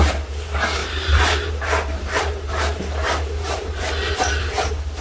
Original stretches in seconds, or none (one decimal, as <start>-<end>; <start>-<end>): 0.0-0.8; 3.8-5.0